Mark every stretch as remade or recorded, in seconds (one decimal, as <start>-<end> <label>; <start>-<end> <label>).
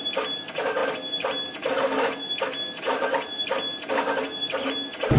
0.0-5.2 recorded